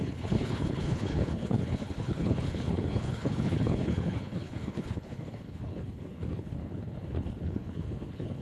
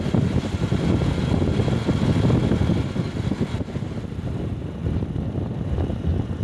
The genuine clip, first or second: second